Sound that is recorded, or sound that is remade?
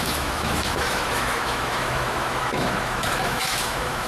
remade